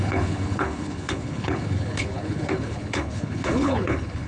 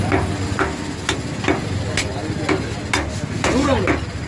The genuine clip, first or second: second